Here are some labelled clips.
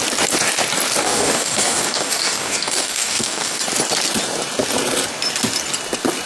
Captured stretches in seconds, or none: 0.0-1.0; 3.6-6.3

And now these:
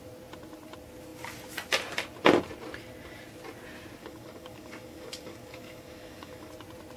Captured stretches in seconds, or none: 0.0-4.0; 6.5-7.0